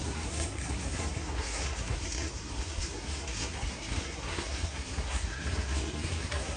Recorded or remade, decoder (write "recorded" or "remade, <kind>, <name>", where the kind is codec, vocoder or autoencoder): remade, codec, SNAC